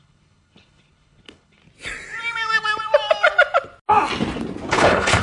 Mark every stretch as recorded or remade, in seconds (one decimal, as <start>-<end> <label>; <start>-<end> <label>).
0.0-1.6 remade; 1.6-4.7 recorded; 4.7-5.2 remade